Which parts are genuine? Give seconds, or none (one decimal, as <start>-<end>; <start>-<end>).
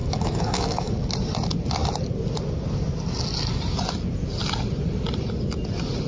0.9-6.1